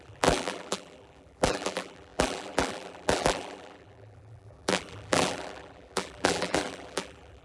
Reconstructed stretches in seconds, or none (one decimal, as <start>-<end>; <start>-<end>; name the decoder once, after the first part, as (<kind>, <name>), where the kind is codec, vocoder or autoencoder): 0.0-7.4 (vocoder, BigVGAN v2)